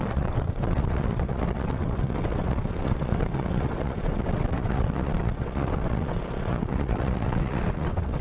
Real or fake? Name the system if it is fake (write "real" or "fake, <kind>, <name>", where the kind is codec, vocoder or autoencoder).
fake, vocoder, WaveNeXt